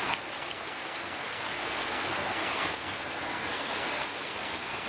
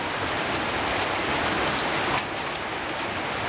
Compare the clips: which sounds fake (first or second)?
first